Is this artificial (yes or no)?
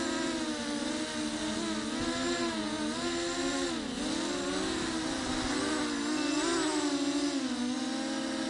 no